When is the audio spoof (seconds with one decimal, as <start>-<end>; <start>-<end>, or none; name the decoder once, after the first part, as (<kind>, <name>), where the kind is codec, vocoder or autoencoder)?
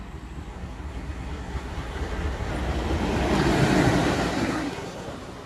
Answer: 0.5-2.5 (codec, SNAC); 4.3-5.1